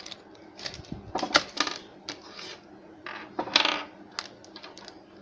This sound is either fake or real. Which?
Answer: real